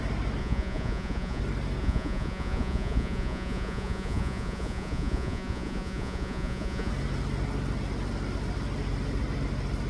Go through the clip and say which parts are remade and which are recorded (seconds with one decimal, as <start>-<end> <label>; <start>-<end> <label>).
0.0-0.4 recorded; 0.4-1.4 remade; 1.4-1.8 recorded; 1.8-6.9 remade; 6.9-9.9 recorded